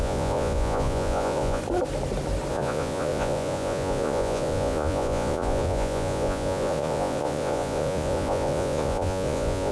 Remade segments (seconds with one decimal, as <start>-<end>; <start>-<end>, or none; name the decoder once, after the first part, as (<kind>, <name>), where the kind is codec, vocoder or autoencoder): 0.0-1.6 (vocoder, Vocos); 2.5-9.7

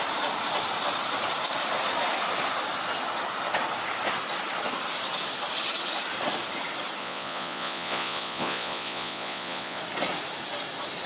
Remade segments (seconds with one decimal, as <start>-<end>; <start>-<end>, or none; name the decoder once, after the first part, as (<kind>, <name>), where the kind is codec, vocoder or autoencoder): 7.0-9.8 (vocoder, Vocos)

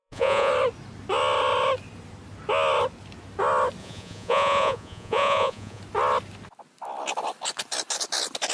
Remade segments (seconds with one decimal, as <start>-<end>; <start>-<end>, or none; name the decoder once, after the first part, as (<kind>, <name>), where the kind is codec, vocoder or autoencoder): 0.0-0.5 (vocoder, Vocos); 3.8-5.8

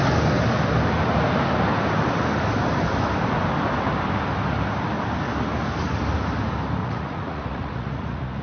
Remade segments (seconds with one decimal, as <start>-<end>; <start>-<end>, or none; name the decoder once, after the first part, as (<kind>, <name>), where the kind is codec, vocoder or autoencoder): 6.8-8.4 (vocoder, Vocos)

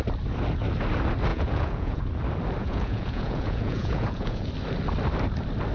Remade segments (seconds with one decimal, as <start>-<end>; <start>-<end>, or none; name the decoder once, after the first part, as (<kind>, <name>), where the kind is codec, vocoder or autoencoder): 1.3-2.0 (vocoder, Vocos); 2.6-4.5